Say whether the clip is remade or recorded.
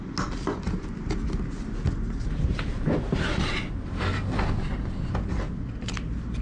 recorded